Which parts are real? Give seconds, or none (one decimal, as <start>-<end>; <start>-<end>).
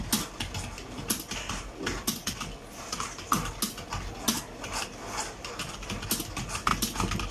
0.0-7.3